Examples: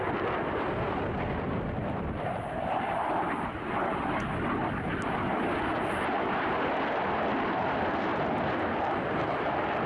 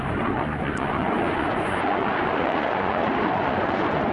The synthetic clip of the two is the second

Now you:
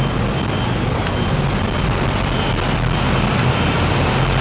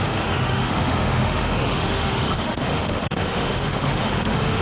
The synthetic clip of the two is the second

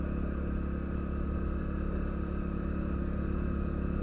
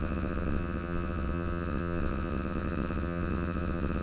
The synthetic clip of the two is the second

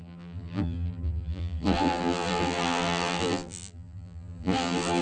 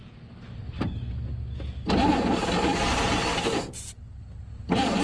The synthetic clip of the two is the first